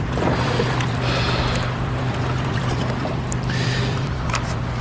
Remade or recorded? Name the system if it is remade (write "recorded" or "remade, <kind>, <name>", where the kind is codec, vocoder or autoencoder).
remade, vocoder, BigVGAN v2